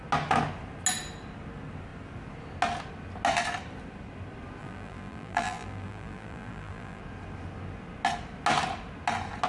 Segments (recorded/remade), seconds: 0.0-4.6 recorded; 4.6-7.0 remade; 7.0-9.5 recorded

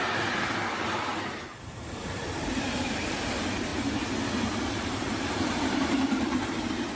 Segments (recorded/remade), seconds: 0.0-3.7 remade; 3.7-4.3 recorded; 4.3-7.0 remade